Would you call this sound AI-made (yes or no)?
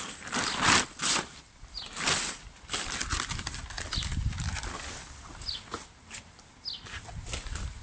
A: no